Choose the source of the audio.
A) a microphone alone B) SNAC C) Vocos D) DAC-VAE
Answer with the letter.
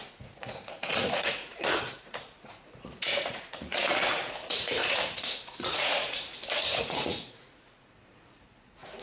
C